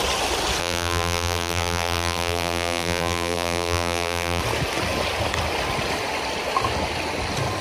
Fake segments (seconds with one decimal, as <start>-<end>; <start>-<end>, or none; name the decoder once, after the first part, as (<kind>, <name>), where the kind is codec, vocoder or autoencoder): 0.6-4.4 (vocoder, BigVGAN v2)